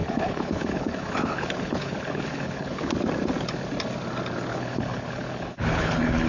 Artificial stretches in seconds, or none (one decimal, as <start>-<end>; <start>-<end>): 0.0-2.9; 4.5-6.3